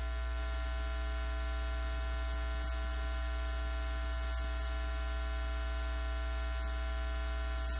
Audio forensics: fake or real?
real